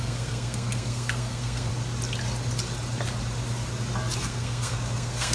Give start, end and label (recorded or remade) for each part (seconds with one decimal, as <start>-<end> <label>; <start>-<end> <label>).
0.0-1.7 remade; 1.7-4.2 recorded; 4.2-5.3 remade